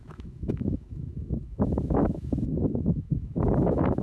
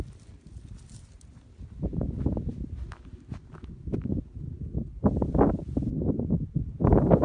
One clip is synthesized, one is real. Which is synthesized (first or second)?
first